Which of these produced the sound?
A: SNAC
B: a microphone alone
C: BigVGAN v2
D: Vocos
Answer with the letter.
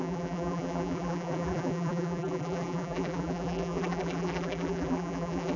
C